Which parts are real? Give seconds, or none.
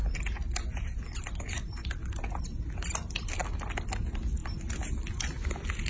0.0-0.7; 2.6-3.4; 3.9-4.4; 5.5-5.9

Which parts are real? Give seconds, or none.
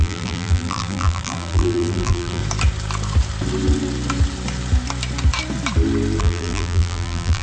2.4-6.2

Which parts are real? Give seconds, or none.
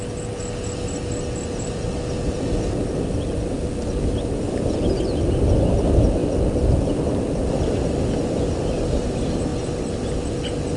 0.0-10.8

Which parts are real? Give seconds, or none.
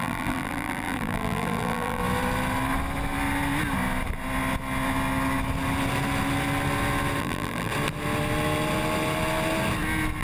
2.0-7.2; 7.7-10.2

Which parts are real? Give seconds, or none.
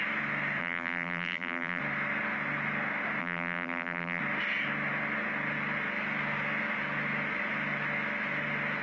0.0-0.6; 1.8-3.2; 4.2-8.8